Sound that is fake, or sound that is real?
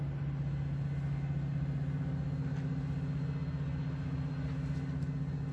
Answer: real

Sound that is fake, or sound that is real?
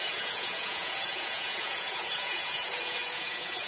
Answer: fake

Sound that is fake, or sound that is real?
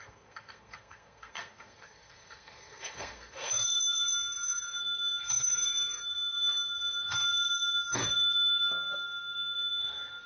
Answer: fake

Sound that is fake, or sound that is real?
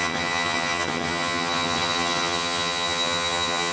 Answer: fake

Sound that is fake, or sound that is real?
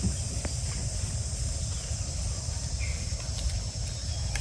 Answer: real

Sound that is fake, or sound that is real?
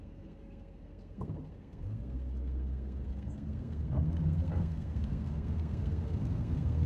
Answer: fake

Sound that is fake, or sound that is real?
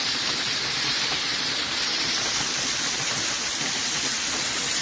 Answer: fake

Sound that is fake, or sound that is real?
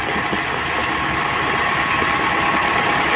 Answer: real